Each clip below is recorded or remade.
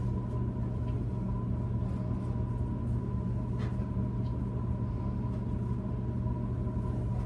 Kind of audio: recorded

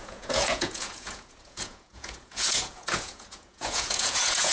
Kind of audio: remade